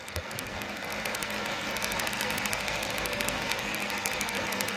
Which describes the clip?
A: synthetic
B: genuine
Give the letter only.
A